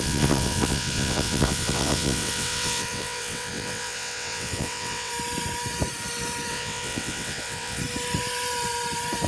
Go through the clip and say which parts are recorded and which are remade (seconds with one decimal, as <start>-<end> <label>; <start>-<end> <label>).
0.0-5.1 remade; 5.1-6.5 recorded; 6.5-7.8 remade; 7.8-9.3 recorded